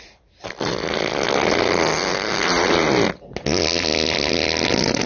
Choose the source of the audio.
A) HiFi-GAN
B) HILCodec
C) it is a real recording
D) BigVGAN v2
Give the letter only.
C